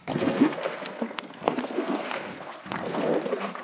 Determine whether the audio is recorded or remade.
remade